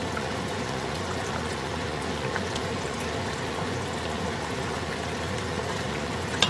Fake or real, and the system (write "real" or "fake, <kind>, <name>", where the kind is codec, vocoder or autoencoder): fake, vocoder, Vocos